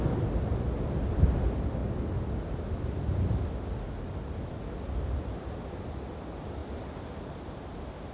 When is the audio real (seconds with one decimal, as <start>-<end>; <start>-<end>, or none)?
0.0-8.1